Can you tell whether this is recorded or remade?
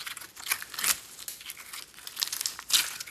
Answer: recorded